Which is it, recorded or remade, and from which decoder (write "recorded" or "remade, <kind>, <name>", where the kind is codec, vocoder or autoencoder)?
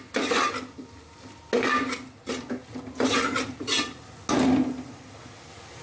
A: recorded